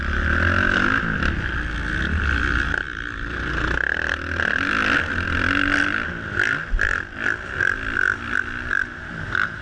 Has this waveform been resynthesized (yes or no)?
no